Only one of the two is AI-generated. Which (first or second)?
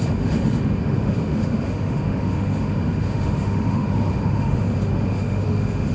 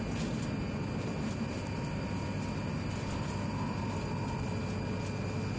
first